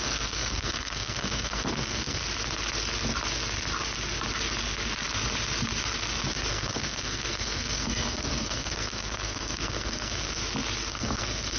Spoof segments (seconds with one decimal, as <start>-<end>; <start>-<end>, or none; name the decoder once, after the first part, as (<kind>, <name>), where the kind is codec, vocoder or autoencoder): 0.0-2.2 (codec, SNAC); 6.5-10.4; 10.9-11.6